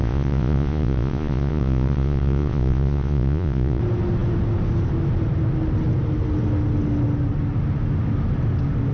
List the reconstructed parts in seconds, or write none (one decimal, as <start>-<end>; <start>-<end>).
0.0-3.8

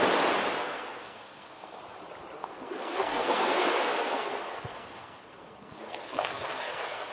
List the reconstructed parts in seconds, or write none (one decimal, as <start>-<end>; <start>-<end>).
0.6-1.8; 2.4-7.1

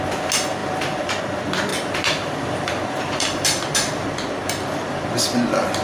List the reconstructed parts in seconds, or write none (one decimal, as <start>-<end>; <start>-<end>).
0.6-1.2; 1.7-5.2

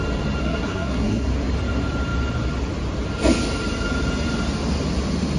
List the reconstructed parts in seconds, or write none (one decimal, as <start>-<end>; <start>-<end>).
0.4-1.3

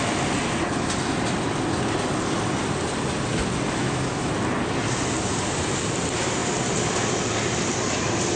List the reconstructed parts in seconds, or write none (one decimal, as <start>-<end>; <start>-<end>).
3.8-4.3